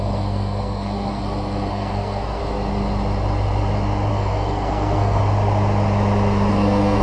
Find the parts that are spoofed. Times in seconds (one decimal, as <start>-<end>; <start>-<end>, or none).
0.0-1.2; 1.7-2.4; 4.1-5.2; 6.5-7.0